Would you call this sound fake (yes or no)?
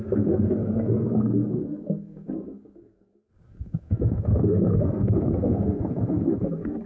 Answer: yes